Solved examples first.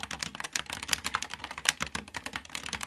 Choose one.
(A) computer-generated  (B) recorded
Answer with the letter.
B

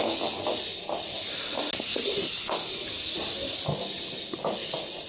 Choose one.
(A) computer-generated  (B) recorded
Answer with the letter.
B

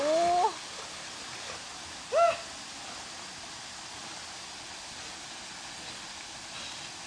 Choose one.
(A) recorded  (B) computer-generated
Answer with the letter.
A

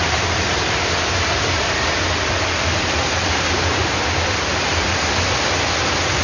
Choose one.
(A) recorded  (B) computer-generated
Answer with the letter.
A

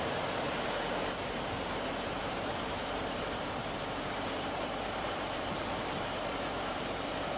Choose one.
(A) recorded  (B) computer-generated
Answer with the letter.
B